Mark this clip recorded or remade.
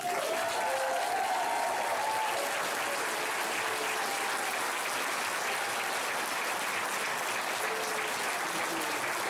recorded